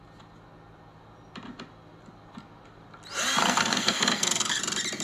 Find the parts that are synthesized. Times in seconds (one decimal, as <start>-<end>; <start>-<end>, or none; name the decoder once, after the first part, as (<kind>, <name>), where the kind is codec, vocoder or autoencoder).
3.4-4.6 (codec, SNAC)